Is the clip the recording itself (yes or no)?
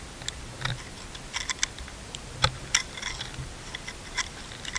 yes